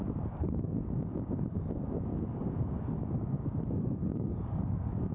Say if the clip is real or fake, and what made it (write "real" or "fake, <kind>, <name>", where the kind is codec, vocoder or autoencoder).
fake, codec, DAC